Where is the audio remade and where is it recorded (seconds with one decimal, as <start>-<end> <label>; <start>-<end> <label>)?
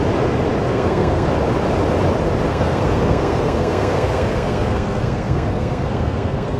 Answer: 0.0-0.7 recorded; 0.7-1.3 remade; 1.3-2.5 recorded; 2.5-6.6 remade